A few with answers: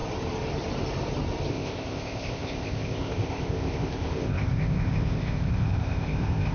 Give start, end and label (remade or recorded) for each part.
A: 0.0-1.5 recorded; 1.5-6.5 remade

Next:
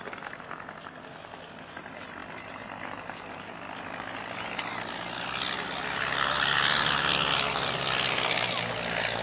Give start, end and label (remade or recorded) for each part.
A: 0.0-9.2 recorded

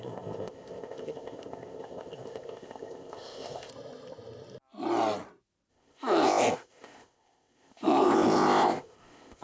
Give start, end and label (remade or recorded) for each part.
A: 0.0-3.7 remade; 3.7-5.7 recorded; 5.7-9.4 remade